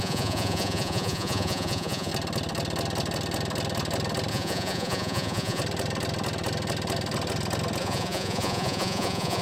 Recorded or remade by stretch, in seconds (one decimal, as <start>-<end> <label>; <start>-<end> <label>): 0.0-2.1 remade; 2.1-4.3 recorded; 4.3-5.6 remade; 5.6-7.8 recorded; 7.8-9.4 remade